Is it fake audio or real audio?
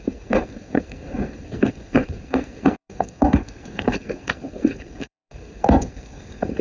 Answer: fake